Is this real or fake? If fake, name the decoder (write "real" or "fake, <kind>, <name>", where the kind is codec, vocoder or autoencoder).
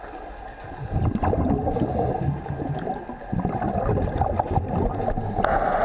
real